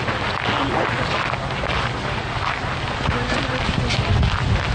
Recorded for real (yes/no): yes